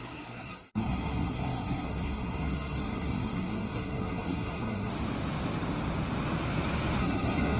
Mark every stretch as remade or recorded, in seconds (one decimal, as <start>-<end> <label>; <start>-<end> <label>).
0.0-4.9 remade; 4.9-7.0 recorded; 7.0-7.6 remade